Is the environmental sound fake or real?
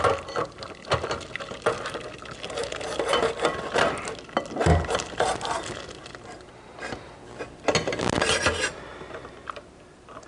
real